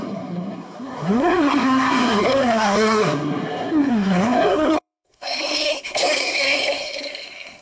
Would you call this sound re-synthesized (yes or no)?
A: yes